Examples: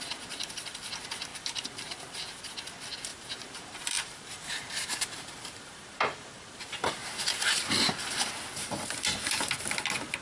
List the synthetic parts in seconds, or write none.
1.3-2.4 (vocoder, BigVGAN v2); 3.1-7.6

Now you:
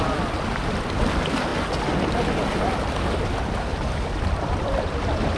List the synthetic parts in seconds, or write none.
3.7-5.4 (vocoder, BigVGAN v2)